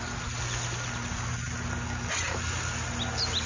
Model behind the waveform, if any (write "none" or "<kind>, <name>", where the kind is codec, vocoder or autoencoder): none